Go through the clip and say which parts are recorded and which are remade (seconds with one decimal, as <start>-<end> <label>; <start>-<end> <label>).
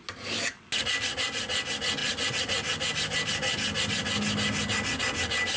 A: 0.0-5.6 recorded